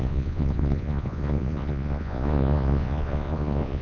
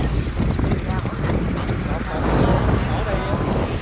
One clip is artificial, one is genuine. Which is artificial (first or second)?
first